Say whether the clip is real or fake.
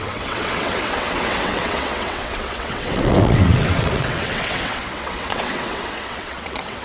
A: fake